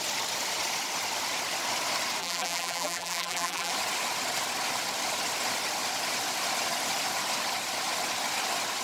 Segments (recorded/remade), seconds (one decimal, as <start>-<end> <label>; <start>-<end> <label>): 0.0-2.2 recorded; 2.2-3.7 remade; 3.7-8.8 recorded